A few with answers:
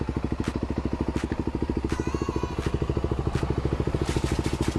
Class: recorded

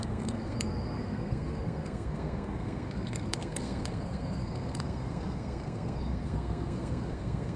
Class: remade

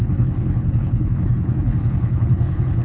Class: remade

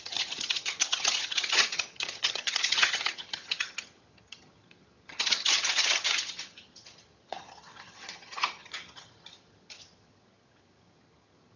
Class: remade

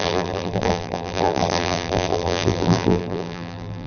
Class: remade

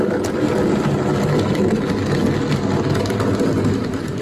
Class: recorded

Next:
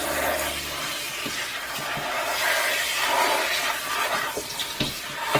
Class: recorded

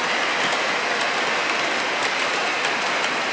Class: recorded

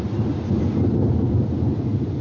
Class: recorded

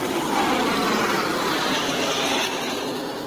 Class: remade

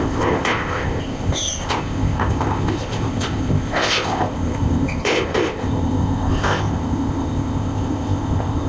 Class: remade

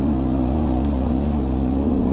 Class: remade